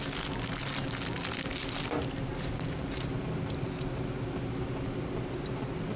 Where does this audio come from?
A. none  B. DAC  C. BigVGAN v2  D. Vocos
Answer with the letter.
A